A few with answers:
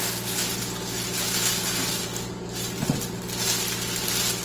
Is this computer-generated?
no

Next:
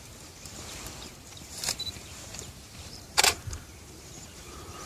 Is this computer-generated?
yes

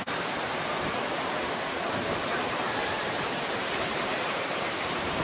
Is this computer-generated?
yes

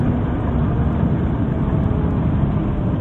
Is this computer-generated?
no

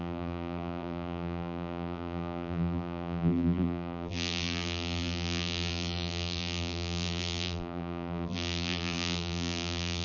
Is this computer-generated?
yes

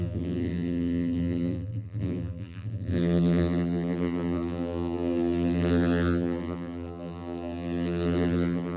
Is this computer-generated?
yes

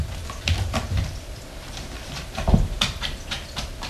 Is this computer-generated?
yes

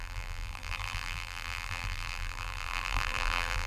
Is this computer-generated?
yes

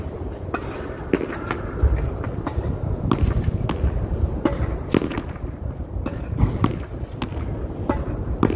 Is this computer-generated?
no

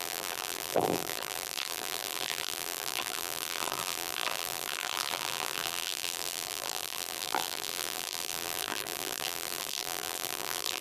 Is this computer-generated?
yes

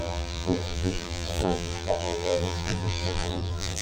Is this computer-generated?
yes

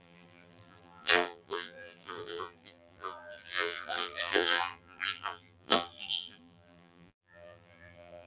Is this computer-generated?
yes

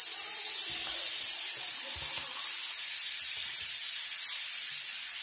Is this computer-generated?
no